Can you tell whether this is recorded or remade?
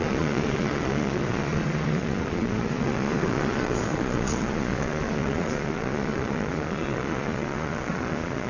remade